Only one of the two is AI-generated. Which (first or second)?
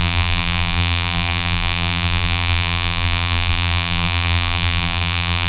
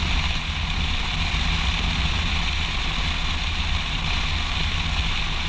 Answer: first